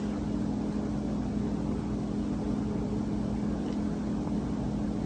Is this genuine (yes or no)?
yes